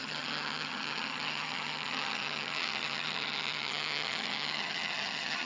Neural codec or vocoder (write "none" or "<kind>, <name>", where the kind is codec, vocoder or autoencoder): vocoder, HiFi-GAN